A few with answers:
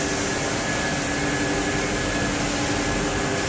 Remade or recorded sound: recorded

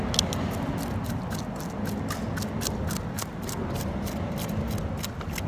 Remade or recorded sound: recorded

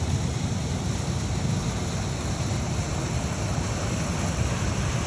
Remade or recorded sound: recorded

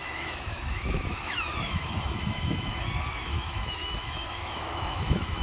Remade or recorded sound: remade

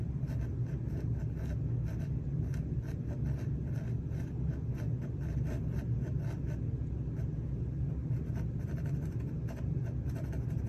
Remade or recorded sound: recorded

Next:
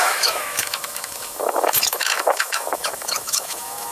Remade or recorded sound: remade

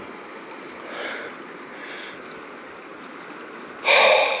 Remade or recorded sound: recorded